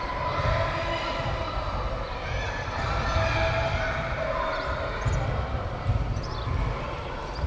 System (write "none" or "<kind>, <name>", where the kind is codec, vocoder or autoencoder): none